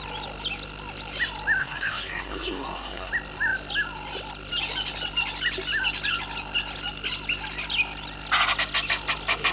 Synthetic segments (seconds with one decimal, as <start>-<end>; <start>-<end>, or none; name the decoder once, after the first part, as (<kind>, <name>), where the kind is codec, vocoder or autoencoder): 1.6-3.1 (codec, SNAC)